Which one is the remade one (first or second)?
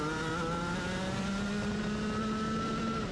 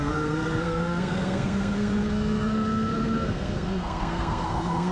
second